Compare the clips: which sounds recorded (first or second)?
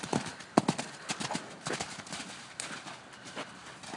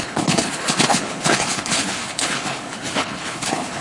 first